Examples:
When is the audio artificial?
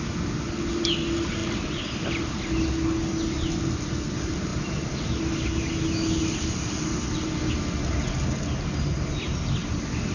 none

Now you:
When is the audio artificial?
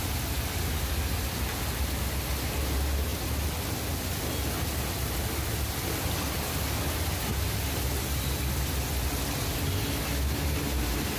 none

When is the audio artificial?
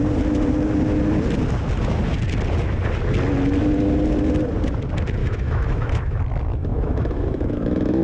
5.2-6.2 (autoencoder, DAC-VAE); 6.7-8.0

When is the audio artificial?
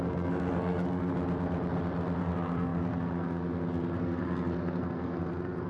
0.0-1.1 (codec, SNAC); 2.2-5.7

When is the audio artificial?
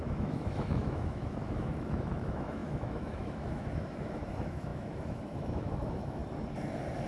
0.0-6.2 (autoencoder, DAC-VAE)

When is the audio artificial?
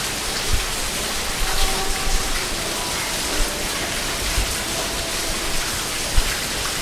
0.0-0.5 (vocoder, BigVGAN v2); 1.4-6.8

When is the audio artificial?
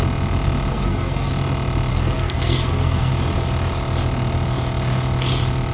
0.7-1.3 (codec, SNAC); 1.9-3.1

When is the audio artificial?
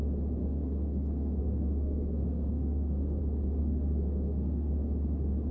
0.4-3.2 (codec, SNAC); 3.6-4.7